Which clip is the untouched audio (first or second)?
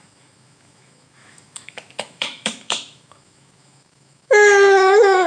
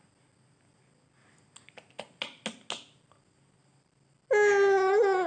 second